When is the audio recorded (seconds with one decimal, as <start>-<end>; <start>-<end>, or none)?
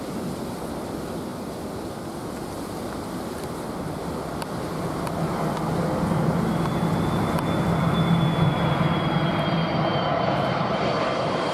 0.0-9.9